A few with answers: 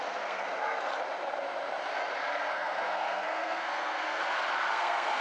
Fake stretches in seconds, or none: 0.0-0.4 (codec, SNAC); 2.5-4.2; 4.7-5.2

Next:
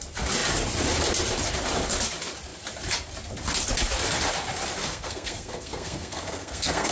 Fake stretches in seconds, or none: 4.8-6.9 (codec, SNAC)

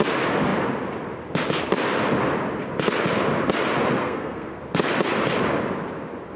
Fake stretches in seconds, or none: 4.0-4.6 (codec, SNAC)

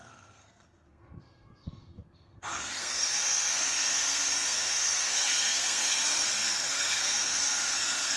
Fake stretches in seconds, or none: 0.0-8.2 (codec, SNAC)

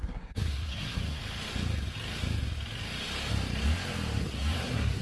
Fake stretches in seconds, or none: 0.0-1.2 (codec, SNAC); 4.2-5.0